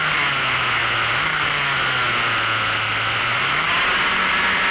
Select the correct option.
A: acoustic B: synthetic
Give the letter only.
A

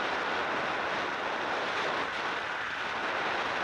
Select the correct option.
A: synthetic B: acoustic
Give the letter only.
B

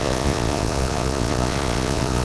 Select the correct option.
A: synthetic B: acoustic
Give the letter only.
A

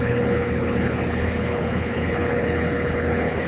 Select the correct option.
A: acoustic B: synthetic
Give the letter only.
B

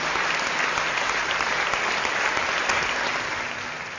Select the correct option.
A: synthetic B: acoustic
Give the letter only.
B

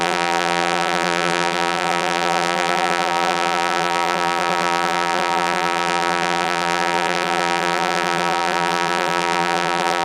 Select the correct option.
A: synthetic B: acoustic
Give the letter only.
A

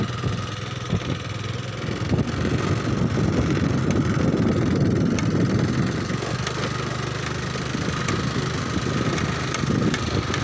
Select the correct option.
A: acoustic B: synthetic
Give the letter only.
A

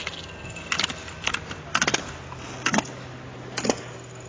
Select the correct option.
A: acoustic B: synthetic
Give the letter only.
A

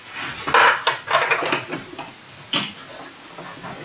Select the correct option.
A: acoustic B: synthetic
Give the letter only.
A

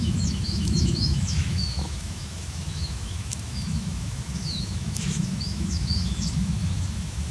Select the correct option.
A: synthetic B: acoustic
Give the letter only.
A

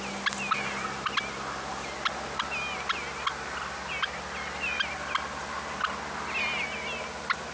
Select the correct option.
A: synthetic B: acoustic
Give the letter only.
B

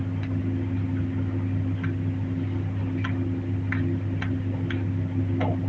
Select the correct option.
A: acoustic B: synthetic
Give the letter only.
A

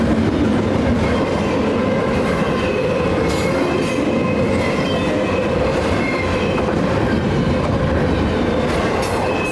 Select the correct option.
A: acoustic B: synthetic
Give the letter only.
A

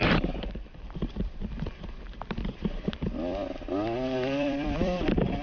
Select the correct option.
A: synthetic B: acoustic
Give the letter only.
A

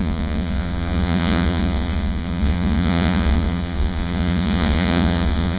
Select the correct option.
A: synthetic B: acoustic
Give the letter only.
A